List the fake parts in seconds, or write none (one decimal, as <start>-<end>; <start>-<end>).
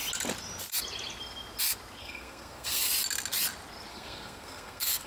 2.0-2.8; 3.9-5.1